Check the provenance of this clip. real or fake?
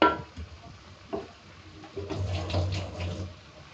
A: real